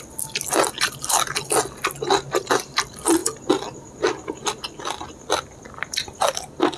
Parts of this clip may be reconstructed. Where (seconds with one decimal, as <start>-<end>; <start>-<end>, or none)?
none